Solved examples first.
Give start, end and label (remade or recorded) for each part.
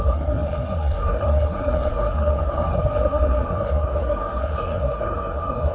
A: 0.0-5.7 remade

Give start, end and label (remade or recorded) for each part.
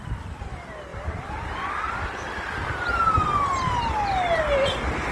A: 0.0-5.1 recorded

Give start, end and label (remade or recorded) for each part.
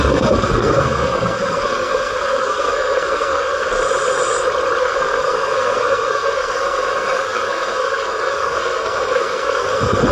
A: 0.0-3.8 remade; 3.8-4.8 recorded; 4.8-10.1 remade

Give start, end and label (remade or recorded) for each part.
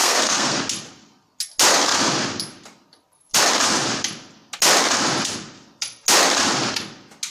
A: 0.0-0.6 remade; 0.6-7.3 recorded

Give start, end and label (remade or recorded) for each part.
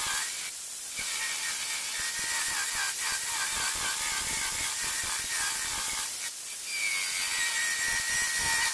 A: 0.0-8.7 recorded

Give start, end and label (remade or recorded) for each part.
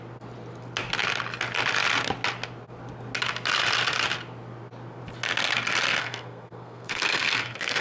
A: 0.0-6.0 recorded; 6.0-7.8 remade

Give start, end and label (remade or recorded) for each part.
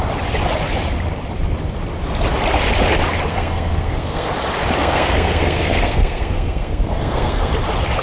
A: 0.0-3.3 recorded; 3.3-4.3 remade; 4.3-4.8 recorded; 4.8-7.5 remade; 7.5-8.0 recorded